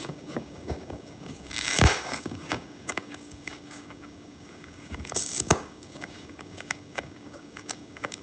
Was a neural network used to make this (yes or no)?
yes